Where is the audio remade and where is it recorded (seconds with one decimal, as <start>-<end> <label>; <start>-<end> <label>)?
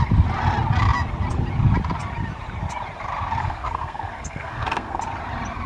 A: 0.0-3.4 recorded; 3.4-5.0 remade; 5.0-5.7 recorded